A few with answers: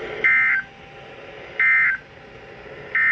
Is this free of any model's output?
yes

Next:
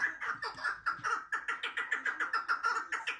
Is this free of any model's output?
yes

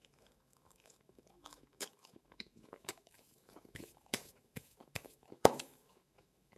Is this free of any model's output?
no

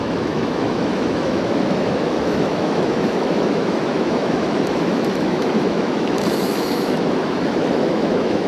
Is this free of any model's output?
no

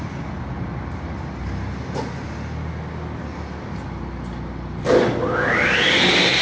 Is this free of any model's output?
yes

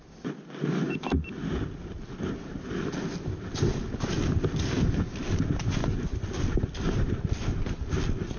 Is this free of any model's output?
yes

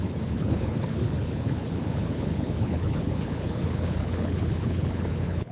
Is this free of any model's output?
no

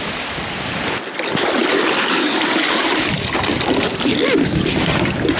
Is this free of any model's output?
yes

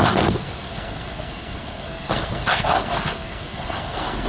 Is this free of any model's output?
no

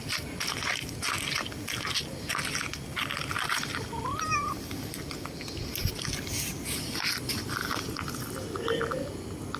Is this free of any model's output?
yes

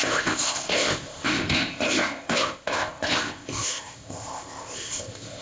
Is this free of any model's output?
no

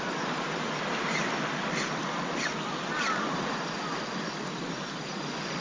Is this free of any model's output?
yes